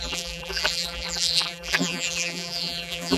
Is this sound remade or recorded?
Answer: remade